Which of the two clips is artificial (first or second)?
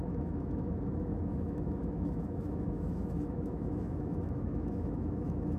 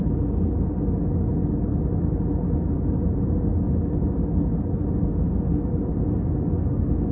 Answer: first